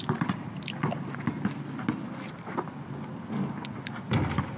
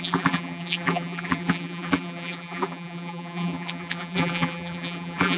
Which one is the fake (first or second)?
second